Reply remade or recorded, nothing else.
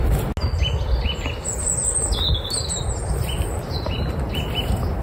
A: recorded